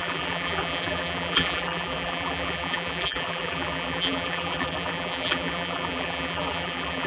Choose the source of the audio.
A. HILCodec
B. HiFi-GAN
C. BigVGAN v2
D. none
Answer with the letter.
C